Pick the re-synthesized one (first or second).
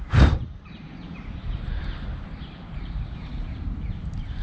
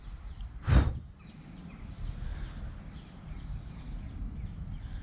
first